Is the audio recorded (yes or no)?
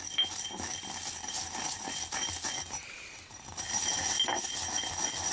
yes